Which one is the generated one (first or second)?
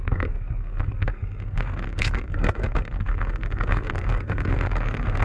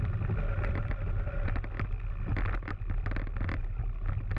first